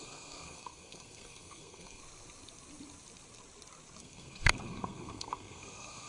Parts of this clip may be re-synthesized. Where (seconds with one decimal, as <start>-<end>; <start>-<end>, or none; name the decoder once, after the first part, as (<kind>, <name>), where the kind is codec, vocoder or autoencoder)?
0.0-2.0 (codec, SNAC); 4.0-6.1